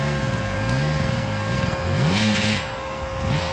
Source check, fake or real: fake